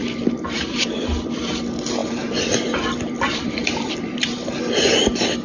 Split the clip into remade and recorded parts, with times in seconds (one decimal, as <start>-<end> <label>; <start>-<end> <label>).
0.0-1.6 remade; 1.6-2.0 recorded; 2.0-4.6 remade; 4.6-5.4 recorded